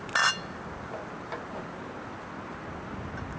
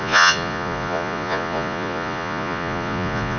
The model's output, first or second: second